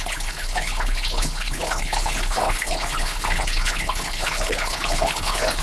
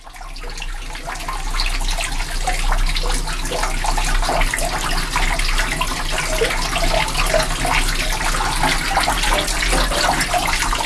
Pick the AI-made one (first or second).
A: first